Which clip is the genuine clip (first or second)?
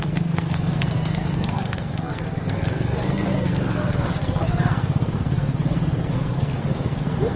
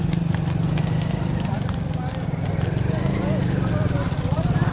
second